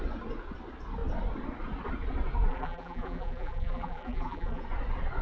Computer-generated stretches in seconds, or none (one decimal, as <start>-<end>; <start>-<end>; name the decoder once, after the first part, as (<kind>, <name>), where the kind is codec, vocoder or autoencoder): 2.5-4.6 (vocoder, BigVGAN v2)